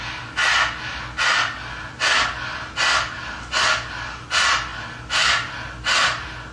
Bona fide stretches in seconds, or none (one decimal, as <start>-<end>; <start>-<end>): 0.0-6.5